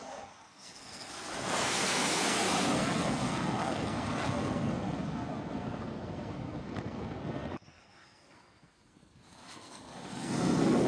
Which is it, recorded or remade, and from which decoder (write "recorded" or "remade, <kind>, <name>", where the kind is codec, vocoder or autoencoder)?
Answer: remade, codec, SNAC